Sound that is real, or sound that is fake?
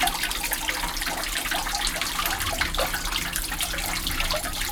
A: real